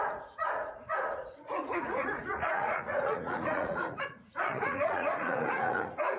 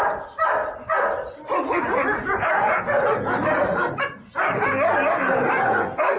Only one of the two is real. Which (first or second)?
second